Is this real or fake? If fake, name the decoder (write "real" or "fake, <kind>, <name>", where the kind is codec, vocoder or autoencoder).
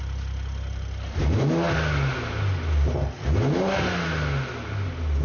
real